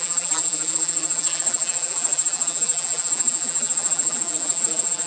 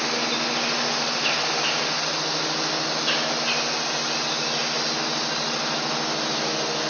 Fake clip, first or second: first